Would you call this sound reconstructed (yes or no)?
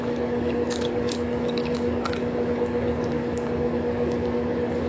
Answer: yes